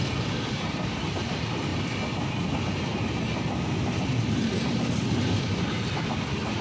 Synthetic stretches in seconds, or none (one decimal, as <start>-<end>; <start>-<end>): 0.0-1.7; 4.3-6.6